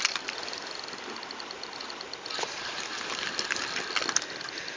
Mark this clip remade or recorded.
recorded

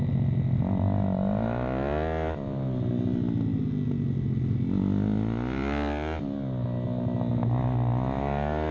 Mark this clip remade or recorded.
recorded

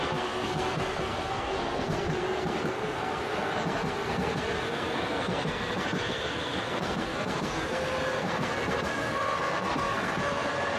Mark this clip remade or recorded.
remade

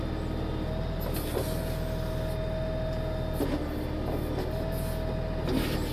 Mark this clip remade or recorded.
recorded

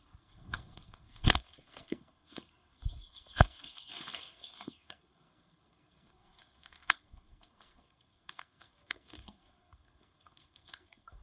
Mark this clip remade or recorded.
remade